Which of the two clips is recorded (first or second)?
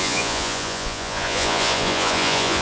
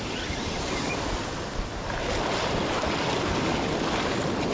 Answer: second